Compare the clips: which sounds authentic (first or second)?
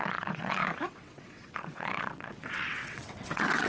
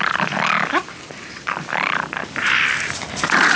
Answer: second